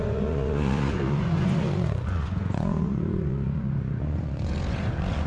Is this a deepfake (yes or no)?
yes